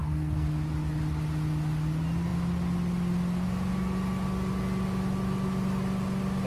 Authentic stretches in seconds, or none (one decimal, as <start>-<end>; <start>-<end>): 0.6-6.5